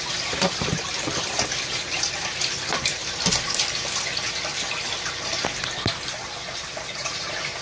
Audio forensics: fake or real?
fake